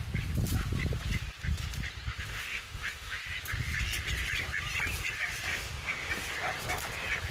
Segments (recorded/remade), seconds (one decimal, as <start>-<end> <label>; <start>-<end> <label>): 0.0-2.1 recorded; 2.1-3.2 remade; 3.2-5.5 recorded; 5.5-6.1 remade; 6.1-7.3 recorded